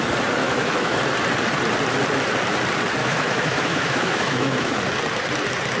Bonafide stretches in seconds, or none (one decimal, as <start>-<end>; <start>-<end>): 0.0-0.4; 1.0-3.0; 4.8-5.8